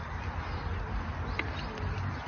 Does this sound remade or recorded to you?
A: recorded